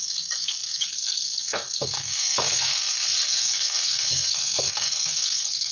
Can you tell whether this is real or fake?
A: fake